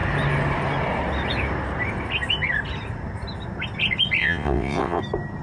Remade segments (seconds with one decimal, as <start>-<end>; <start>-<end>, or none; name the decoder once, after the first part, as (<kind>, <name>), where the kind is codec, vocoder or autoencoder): 4.2-5.0 (vocoder, WaveNeXt)